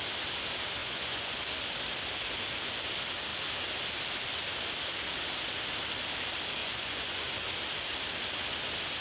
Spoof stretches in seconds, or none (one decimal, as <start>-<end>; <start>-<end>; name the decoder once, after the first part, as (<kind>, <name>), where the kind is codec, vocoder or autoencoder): 0.8-1.4 (vocoder, Vocos); 6.6-7.3